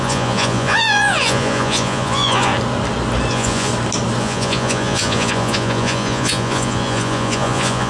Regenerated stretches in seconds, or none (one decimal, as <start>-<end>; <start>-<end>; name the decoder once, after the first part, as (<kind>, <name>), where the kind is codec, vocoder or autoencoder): 0.0-2.5 (vocoder, Vocos); 3.3-3.7; 4.2-7.9